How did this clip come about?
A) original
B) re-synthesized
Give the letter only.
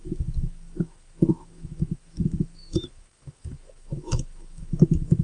B